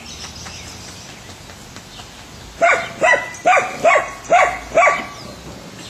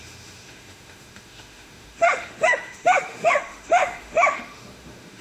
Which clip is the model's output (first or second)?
second